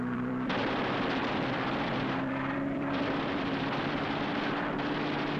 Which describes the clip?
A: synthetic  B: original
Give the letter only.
A